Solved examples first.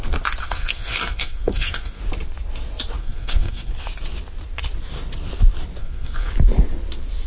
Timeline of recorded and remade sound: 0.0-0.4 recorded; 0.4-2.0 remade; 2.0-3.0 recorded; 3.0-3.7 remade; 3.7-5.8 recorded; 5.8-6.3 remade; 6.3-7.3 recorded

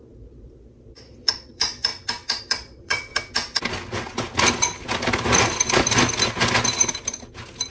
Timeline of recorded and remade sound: 0.0-1.9 remade; 1.9-2.4 recorded; 2.4-3.1 remade; 3.1-7.7 recorded

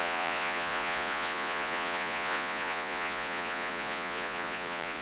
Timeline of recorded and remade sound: 0.0-5.0 remade

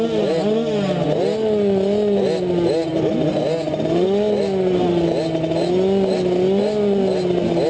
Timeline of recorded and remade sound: 0.0-7.7 recorded

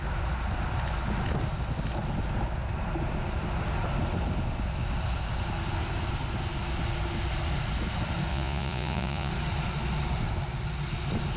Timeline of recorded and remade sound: 0.0-8.3 recorded; 8.3-9.3 remade; 9.3-11.4 recorded

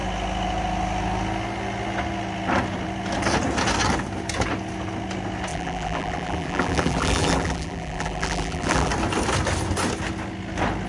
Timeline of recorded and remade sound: 0.0-5.5 recorded; 5.5-8.9 remade; 8.9-10.9 recorded

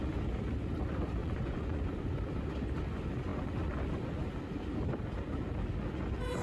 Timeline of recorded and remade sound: 0.0-1.2 recorded; 1.2-1.8 remade; 1.8-6.4 recorded

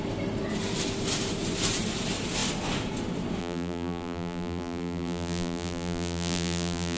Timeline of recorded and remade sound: 0.0-3.4 recorded; 3.4-7.0 remade